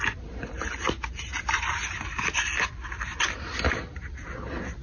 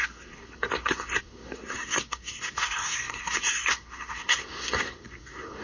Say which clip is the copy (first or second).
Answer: second